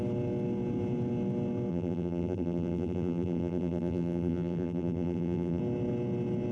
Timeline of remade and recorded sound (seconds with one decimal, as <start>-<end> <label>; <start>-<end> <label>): 0.0-1.7 recorded; 1.7-5.6 remade; 5.6-6.5 recorded